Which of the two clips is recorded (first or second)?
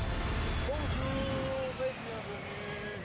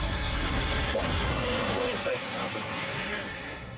first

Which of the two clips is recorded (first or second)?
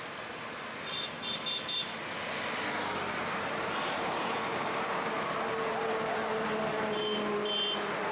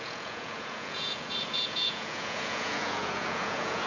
first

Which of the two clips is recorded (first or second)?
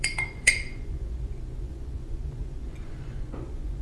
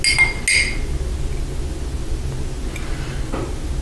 second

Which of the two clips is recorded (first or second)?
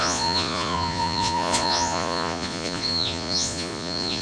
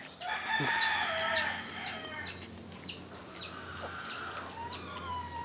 second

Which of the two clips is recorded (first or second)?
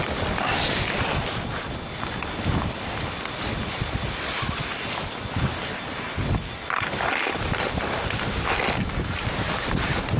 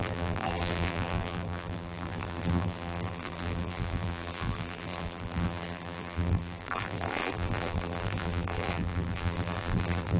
first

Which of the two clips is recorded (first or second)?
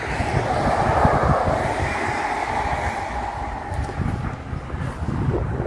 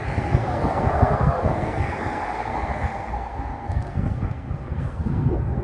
first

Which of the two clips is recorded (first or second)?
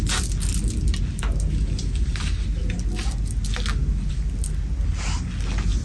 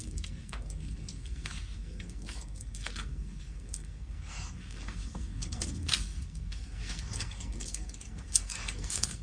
first